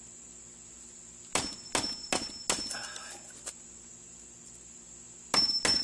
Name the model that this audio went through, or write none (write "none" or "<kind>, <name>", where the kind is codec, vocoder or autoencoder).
none